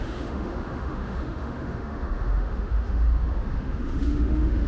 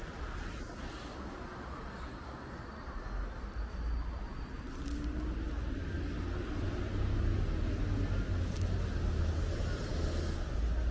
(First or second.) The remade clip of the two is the first